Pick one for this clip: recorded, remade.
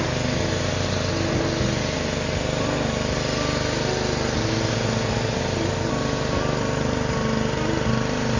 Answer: recorded